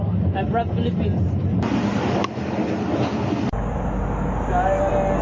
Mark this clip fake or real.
real